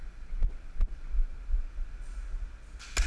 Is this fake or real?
real